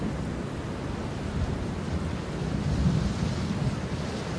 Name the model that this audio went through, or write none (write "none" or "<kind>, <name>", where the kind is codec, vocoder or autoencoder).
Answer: none